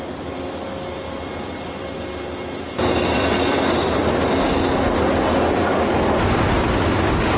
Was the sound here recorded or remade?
recorded